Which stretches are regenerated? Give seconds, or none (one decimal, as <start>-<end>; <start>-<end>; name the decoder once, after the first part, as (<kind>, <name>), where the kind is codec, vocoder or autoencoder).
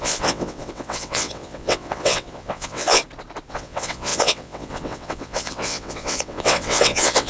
0.0-3.0 (vocoder, WaveNeXt); 3.5-7.3